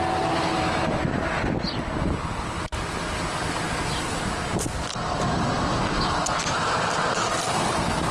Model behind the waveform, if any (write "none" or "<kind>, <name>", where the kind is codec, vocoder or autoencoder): none